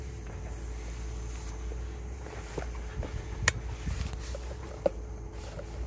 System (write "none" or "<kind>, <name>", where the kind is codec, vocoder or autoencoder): none